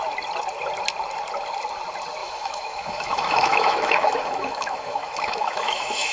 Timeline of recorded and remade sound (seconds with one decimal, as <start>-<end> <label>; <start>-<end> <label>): 0.0-2.2 recorded; 2.2-6.1 remade